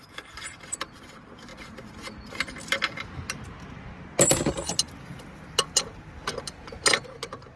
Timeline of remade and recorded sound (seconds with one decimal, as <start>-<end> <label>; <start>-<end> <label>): 0.0-7.6 recorded